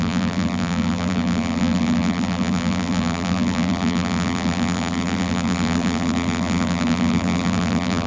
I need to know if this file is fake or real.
fake